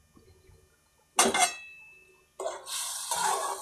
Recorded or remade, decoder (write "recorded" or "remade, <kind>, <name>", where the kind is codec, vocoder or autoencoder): recorded